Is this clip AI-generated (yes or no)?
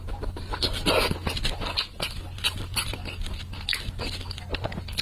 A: no